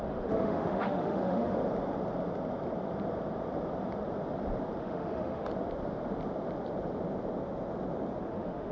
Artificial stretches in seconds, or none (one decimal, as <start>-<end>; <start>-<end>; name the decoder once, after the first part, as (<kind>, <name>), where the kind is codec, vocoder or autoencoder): 0.0-1.6 (autoencoder, DAC-VAE); 4.8-5.5; 8.2-8.7

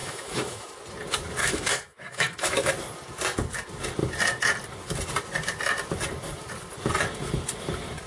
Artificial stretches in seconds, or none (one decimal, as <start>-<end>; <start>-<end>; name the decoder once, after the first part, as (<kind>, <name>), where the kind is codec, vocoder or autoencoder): 0.0-0.7 (autoencoder, DAC-VAE); 1.4-2.7

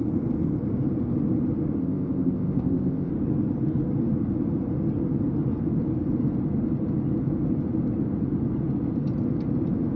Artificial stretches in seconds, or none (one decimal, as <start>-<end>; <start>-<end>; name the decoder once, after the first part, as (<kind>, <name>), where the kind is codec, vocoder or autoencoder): 1.8-3.1 (codec, ZipCodec)

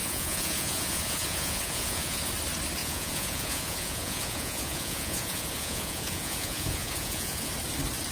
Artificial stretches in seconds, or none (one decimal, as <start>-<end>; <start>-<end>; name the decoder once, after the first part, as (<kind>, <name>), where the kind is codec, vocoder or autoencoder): 0.0-2.3 (vocoder, Vocos); 2.8-7.5

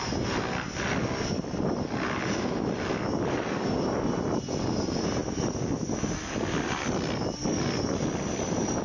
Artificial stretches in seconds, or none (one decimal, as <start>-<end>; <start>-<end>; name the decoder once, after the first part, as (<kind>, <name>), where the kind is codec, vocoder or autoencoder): none

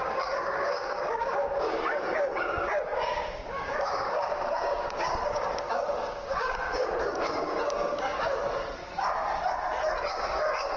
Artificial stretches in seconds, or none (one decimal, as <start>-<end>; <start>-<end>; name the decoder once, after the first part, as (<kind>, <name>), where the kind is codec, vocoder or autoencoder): 0.0-8.4 (codec, DAC); 10.1-10.8